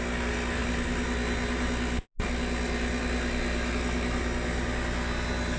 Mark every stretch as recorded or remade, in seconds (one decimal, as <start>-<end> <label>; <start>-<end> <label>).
0.0-5.6 recorded